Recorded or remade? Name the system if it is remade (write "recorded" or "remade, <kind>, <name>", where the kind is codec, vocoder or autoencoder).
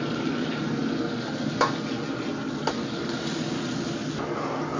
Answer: recorded